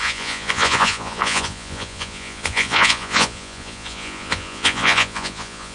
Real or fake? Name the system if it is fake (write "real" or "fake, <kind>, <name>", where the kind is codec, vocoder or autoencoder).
fake, vocoder, Vocos